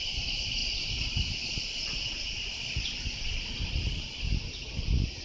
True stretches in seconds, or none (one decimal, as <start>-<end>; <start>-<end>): 0.0-5.2

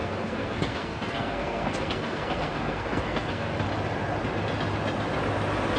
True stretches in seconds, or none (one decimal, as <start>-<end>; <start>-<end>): 3.5-5.8

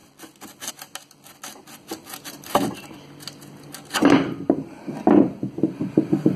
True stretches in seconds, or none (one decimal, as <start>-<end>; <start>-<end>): 0.0-6.4

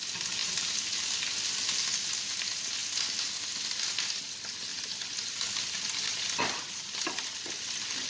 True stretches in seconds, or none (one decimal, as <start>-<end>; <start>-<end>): 0.0-8.1